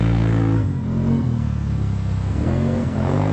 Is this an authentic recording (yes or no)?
no